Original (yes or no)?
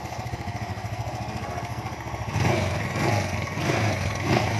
no